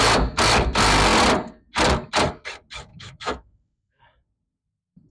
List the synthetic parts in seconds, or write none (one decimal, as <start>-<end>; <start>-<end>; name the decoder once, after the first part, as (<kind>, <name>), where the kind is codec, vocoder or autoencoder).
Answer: 2.9-4.0 (autoencoder, DAC-VAE)